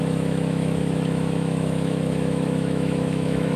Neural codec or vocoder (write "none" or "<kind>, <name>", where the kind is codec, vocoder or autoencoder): autoencoder, DAC-VAE